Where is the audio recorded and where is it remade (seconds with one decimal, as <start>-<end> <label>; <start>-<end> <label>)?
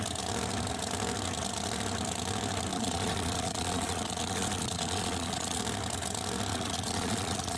0.0-2.7 recorded; 2.7-5.6 remade; 5.6-6.5 recorded; 6.5-7.6 remade